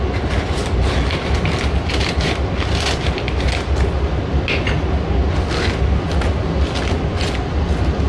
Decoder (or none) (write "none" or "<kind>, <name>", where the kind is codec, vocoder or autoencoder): none